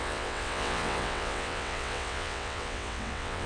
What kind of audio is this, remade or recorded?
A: remade